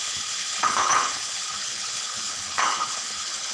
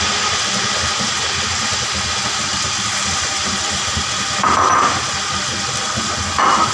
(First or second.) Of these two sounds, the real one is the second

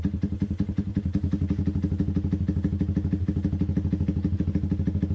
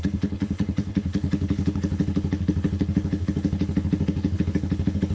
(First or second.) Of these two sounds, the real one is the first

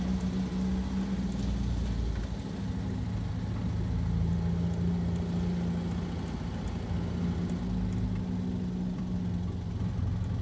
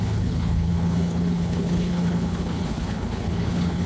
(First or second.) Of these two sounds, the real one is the first